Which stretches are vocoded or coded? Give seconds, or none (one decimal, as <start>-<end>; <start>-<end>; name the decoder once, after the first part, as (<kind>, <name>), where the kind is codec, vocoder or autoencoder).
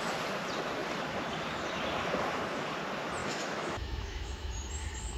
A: 3.2-4.5 (autoencoder, DAC-VAE)